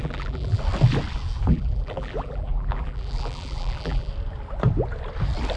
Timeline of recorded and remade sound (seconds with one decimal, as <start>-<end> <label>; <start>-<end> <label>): 0.0-0.6 remade; 0.6-1.5 recorded; 1.5-4.1 remade; 4.1-5.6 recorded